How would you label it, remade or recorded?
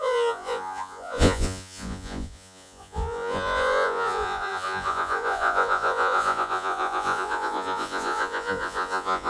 remade